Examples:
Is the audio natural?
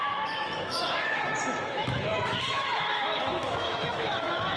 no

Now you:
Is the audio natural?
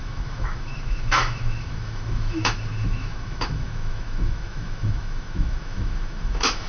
no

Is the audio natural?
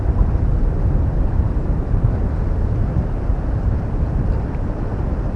yes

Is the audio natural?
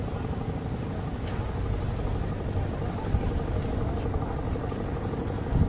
yes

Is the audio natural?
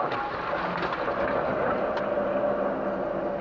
yes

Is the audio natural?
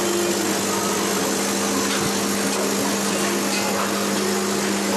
yes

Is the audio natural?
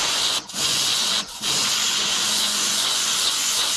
no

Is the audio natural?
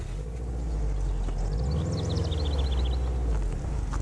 yes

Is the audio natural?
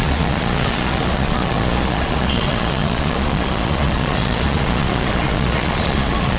no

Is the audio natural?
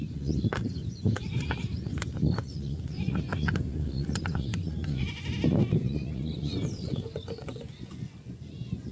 no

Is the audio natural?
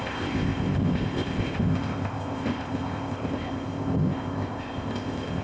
no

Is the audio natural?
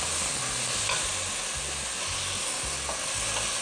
yes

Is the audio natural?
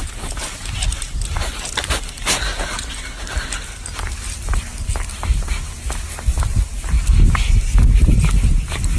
yes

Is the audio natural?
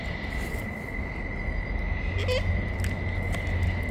yes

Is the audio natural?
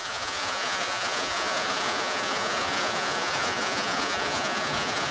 no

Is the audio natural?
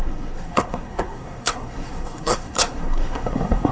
no